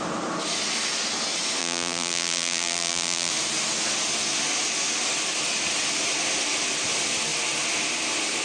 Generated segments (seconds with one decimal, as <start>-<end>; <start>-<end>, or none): 1.6-3.3